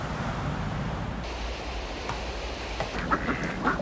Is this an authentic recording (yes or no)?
yes